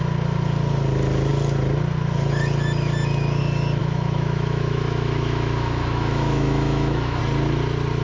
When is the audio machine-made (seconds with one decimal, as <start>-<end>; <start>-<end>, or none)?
3.8-7.2